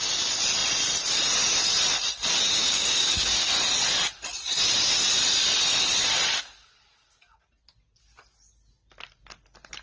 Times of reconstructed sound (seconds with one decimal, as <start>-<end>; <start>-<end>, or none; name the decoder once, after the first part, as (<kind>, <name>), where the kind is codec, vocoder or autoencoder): 2.6-3.5 (codec, DAC)

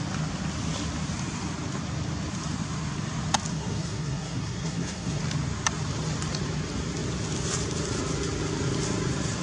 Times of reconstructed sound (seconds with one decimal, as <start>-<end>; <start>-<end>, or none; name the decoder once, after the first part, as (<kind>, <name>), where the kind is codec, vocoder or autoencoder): 3.5-5.2 (codec, SNAC)

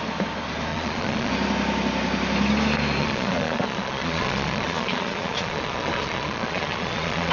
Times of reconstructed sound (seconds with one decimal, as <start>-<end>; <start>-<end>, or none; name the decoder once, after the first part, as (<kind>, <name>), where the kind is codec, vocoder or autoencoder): 0.7-1.3 (vocoder, Vocos); 3.0-7.3

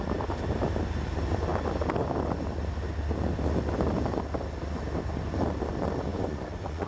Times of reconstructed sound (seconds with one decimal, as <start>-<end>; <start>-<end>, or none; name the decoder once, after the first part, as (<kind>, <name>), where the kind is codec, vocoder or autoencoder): 6.1-6.9 (vocoder, Vocos)

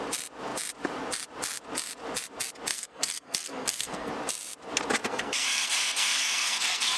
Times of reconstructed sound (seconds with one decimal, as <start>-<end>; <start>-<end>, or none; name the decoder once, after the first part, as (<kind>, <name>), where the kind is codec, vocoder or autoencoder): 2.7-4.1 (codec, SNAC); 5.0-7.0